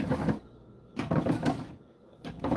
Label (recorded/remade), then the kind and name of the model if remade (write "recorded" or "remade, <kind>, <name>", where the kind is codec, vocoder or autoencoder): remade, codec, DAC